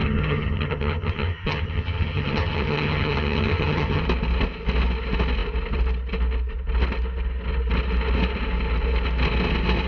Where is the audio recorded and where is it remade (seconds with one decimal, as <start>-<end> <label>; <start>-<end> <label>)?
0.0-4.0 remade; 4.0-9.9 recorded